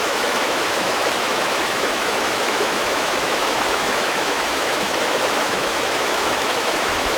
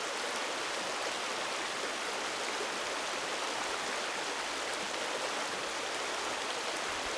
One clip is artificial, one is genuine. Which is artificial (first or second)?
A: first